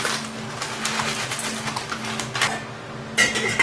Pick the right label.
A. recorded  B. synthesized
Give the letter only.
A